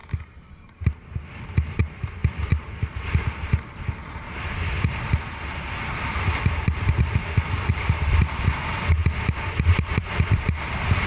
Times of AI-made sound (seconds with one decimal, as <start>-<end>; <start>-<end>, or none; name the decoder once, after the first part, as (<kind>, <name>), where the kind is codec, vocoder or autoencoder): 1.4-2.2 (vocoder, BigVGAN v2); 6.2-9.0; 9.6-11.1

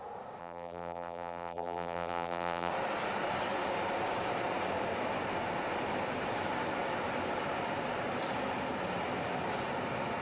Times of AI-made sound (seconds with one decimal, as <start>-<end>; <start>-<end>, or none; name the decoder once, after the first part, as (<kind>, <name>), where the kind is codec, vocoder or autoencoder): 0.4-2.7 (vocoder, BigVGAN v2)